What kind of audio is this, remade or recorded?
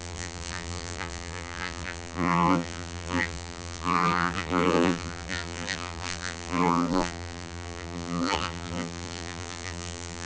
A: remade